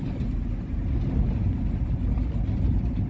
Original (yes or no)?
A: yes